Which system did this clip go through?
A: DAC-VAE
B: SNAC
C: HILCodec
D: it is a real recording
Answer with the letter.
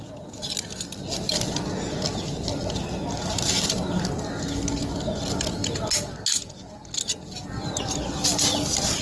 D